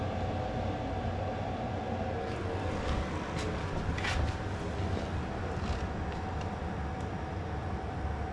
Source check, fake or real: real